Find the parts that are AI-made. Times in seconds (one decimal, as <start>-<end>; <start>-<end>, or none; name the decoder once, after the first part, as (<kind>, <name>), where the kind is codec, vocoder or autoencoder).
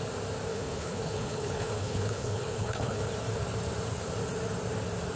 0.5-3.0 (codec, HILCodec)